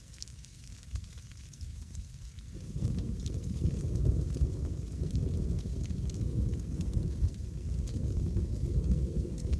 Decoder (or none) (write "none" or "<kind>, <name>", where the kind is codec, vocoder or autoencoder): codec, SNAC